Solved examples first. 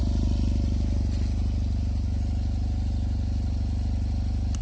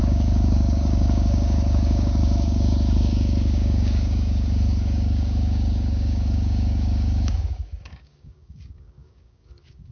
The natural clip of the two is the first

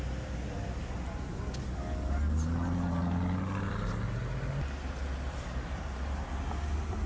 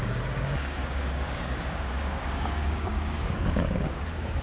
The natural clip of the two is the first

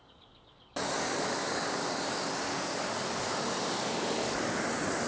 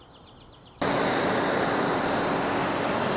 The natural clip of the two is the second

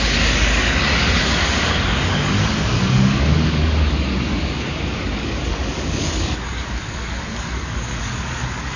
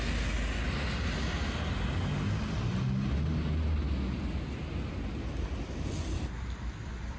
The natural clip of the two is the second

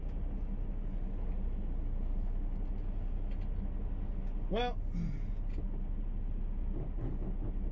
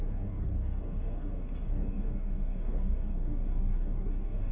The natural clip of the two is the first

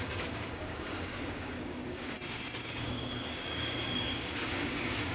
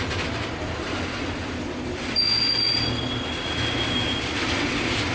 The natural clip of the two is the second